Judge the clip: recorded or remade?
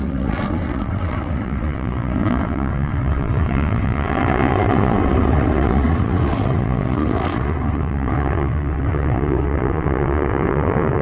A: remade